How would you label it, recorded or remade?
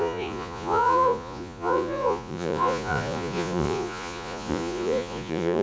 remade